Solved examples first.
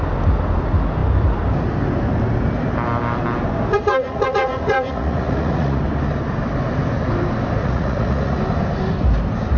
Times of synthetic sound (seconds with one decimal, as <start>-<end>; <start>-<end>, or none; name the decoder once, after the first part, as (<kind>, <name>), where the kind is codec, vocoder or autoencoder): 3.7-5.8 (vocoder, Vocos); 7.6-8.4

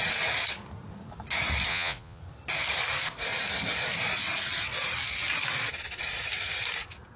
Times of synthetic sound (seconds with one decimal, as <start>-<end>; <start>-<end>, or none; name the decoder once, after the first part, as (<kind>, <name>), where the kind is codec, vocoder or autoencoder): 1.7-2.2 (vocoder, Vocos)

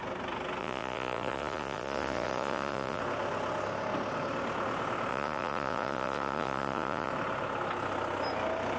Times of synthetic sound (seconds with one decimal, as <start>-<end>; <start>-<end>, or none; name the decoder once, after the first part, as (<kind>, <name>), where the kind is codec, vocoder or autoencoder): 0.6-3.0 (vocoder, Vocos); 5.1-7.1

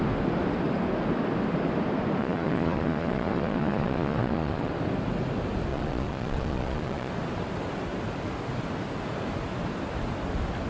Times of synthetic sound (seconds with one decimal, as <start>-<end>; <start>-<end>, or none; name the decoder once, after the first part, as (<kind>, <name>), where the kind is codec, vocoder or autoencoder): 2.2-4.7 (vocoder, Vocos); 5.7-7.1

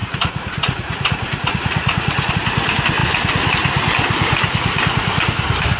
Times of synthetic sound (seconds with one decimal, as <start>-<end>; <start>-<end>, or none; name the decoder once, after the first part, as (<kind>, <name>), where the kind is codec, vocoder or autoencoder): 0.0-2.3 (vocoder, Vocos)

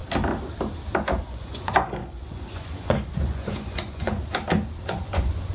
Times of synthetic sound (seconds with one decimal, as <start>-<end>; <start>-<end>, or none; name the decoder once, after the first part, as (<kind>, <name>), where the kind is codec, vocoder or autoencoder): 1.1-4.2 (vocoder, Vocos); 4.9-5.5

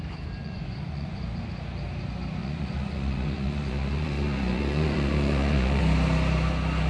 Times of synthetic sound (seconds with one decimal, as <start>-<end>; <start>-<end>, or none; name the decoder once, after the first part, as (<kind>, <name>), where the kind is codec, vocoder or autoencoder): 0.4-1.2 (vocoder, Vocos); 2.4-5.8

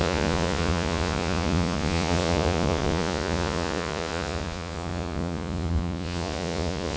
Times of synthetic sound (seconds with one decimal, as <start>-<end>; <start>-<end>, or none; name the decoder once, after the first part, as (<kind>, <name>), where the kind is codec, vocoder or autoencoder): 0.0-7.0 (vocoder, Vocos)